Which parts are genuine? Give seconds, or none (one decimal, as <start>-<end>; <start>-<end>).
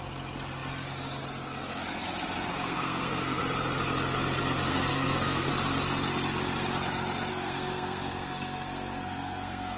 0.0-2.5; 3.4-4.7; 5.5-7.3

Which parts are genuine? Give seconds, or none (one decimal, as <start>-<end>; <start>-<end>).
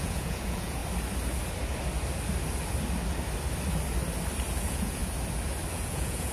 0.8-4.6; 5.0-5.7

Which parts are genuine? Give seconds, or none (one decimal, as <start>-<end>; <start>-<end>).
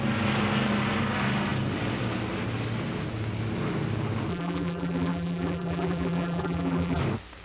0.0-4.3; 7.0-7.4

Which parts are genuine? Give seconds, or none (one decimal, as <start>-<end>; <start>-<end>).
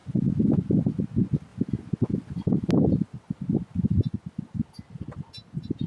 0.0-5.9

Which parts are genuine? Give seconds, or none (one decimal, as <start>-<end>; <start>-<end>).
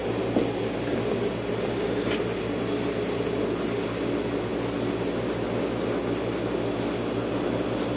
0.0-8.0